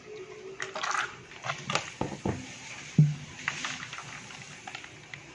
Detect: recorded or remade recorded